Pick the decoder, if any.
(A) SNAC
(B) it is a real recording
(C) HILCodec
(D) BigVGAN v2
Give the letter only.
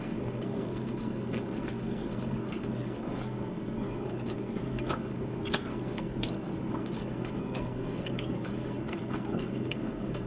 A